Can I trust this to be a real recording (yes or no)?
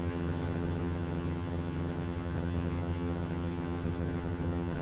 no